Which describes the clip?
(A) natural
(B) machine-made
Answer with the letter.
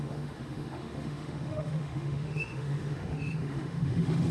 B